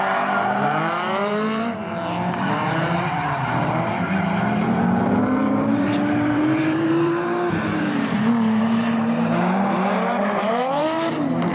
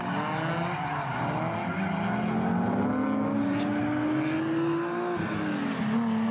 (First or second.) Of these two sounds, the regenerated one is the first